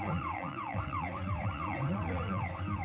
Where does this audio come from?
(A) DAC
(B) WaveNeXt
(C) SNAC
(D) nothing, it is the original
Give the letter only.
B